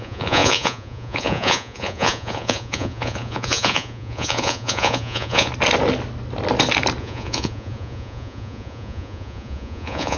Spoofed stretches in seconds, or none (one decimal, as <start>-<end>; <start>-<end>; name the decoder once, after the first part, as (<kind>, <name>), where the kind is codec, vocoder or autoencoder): 0.0-5.5 (vocoder, Vocos); 7.0-10.2